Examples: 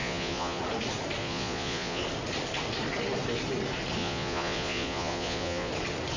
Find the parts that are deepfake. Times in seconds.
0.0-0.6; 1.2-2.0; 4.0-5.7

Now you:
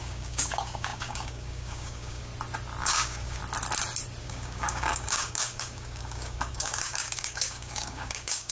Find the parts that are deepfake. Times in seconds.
0.0-2.3; 2.8-3.4; 4.2-8.5

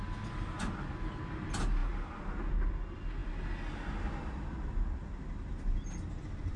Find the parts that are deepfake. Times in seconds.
none

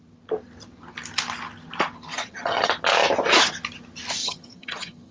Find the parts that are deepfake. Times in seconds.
2.1-2.7; 4.2-5.1

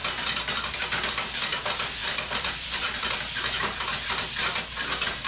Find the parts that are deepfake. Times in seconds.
2.0-5.3

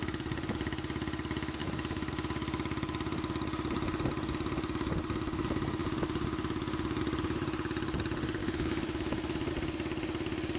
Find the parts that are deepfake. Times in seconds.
1.6-2.1; 8.4-9.5

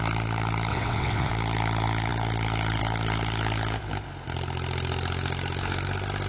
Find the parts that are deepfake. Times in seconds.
0.7-1.3